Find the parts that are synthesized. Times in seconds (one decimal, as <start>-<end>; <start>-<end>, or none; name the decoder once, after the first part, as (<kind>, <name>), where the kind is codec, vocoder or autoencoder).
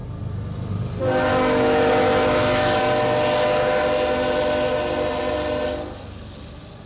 1.3-2.8 (autoencoder, DAC-VAE)